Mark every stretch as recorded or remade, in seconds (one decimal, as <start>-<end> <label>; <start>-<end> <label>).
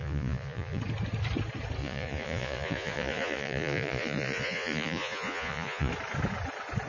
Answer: 0.0-0.8 remade; 0.8-1.8 recorded; 1.8-5.9 remade; 5.9-6.9 recorded